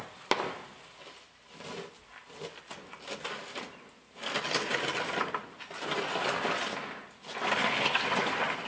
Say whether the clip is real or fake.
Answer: real